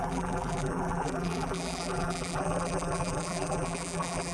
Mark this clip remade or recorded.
remade